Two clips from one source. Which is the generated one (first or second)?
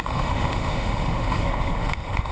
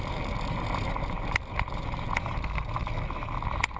first